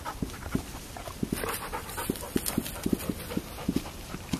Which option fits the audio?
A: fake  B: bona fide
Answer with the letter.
B